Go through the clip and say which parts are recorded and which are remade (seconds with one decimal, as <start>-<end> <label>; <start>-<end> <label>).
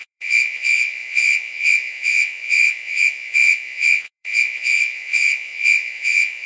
0.0-6.5 remade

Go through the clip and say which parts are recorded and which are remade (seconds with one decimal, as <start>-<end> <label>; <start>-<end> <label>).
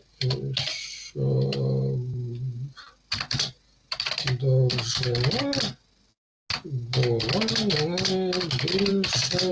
0.0-9.5 recorded